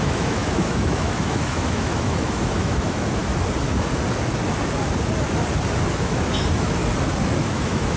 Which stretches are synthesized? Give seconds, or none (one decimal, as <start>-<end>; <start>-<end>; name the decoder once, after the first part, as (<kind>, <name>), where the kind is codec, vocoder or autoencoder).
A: 0.0-3.2 (autoencoder, DAC-VAE); 5.9-6.8; 7.4-8.0